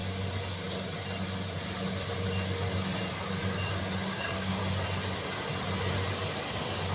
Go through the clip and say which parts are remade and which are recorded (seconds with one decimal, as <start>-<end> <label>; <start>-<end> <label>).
0.0-4.1 recorded; 4.1-4.6 remade; 4.6-6.5 recorded; 6.5-6.9 remade